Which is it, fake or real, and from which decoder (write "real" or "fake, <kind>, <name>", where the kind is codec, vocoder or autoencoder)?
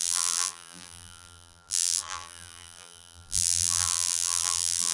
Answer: fake, vocoder, BigVGAN v2